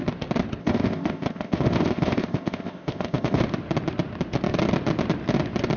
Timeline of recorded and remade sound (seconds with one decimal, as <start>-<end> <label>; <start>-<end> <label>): 0.0-0.6 recorded; 0.6-3.4 remade; 3.4-5.8 recorded